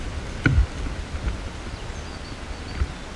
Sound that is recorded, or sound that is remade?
recorded